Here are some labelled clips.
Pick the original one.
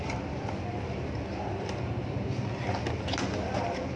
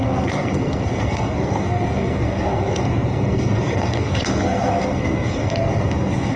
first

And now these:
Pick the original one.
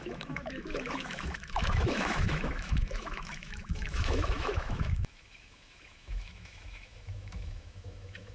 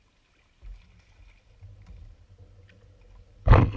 second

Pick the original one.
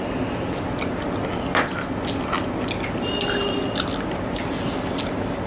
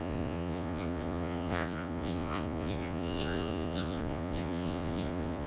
first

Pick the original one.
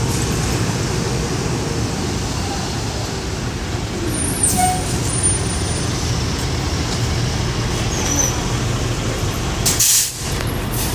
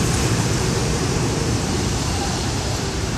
first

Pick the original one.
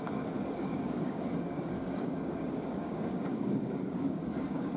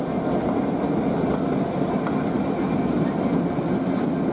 second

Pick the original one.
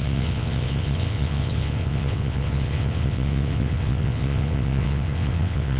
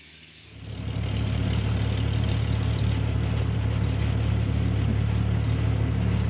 second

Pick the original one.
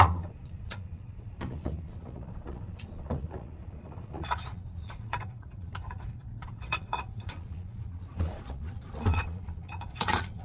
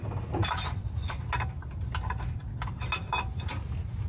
second